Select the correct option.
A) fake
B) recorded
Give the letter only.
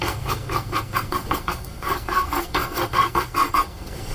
A